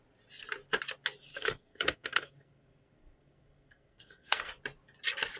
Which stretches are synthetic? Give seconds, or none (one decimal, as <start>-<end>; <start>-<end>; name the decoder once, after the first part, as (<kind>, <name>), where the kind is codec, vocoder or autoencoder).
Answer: 1.3-4.5 (codec, SNAC)